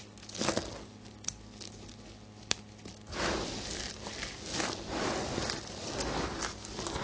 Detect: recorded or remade recorded